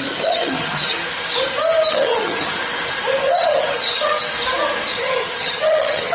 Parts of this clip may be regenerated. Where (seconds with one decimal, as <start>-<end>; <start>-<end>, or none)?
0.0-1.0; 1.9-2.6; 3.2-4.1; 4.9-6.1

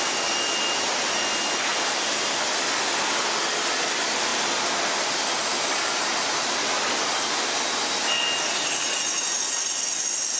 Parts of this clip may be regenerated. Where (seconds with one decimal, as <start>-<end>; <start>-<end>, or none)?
none

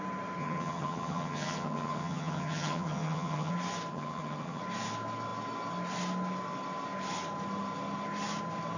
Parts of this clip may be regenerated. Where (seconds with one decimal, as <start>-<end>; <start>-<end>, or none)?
0.4-3.5; 3.9-4.6

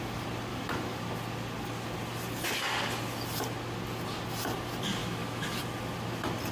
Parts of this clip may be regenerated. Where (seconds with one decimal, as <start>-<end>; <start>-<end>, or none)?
0.5-1.0; 5.0-5.6

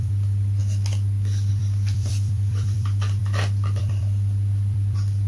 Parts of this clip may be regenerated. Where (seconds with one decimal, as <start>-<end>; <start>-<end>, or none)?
0.0-0.6; 1.5-3.2; 3.8-5.3

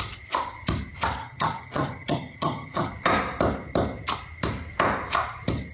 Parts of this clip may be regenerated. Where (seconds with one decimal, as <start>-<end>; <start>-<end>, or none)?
1.2-2.9

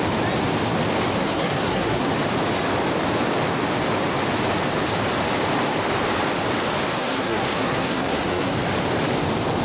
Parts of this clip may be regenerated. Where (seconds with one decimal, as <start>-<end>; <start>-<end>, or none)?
1.2-2.1; 7.0-8.5